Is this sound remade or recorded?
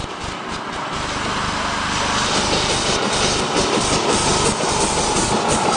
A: recorded